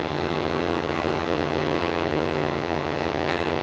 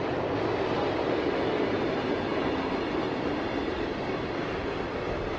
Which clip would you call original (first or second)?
second